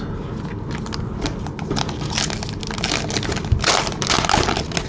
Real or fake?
real